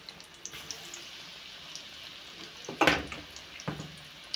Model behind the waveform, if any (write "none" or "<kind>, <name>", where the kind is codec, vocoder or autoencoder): none